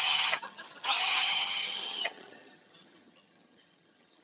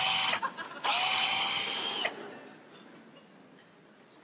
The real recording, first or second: second